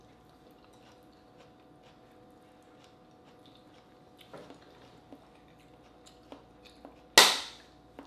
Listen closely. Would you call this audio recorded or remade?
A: recorded